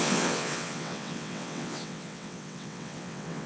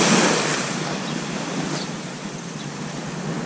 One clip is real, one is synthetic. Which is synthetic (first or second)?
first